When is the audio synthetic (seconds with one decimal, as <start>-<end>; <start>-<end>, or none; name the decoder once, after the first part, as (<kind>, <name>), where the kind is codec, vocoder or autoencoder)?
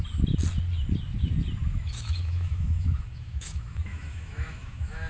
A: 1.7-5.1 (autoencoder, DAC-VAE)